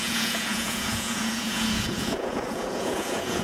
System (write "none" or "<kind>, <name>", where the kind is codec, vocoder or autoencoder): vocoder, Vocos